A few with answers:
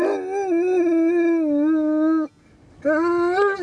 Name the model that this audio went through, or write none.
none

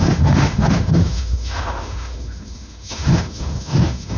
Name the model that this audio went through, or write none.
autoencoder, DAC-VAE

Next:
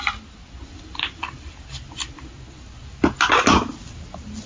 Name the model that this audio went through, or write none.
none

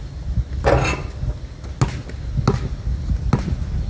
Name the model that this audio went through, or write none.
none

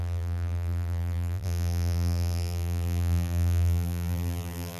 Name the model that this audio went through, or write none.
vocoder, BigVGAN v2